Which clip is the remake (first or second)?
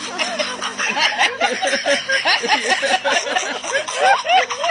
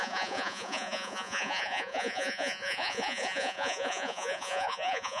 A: second